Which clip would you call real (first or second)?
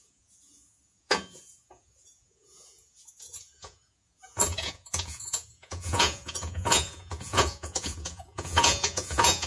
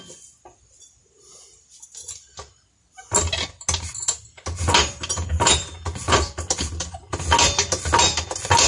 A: second